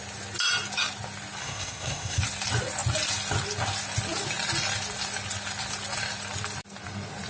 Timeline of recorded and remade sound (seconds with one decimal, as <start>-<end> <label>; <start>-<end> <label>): 0.0-1.4 recorded; 1.4-2.2 remade; 2.2-7.3 recorded